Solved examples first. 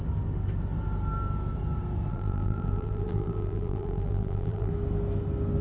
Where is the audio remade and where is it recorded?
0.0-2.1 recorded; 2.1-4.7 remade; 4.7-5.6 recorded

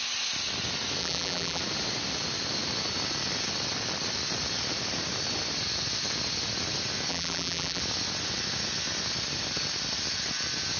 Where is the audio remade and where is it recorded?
0.0-1.0 recorded; 1.0-1.6 remade; 1.6-7.1 recorded; 7.1-7.8 remade; 7.8-10.8 recorded